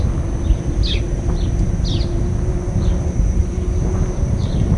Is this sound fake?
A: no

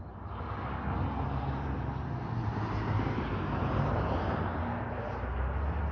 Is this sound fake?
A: no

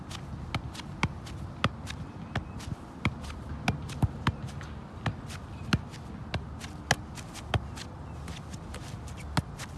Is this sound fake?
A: no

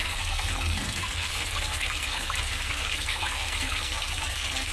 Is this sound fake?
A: yes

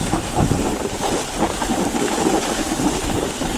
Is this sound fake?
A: no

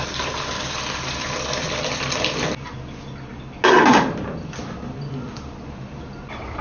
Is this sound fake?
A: no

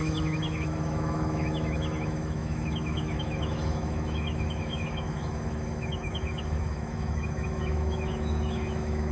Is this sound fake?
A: yes